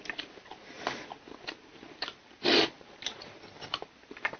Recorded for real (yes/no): no